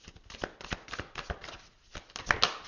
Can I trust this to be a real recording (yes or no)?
yes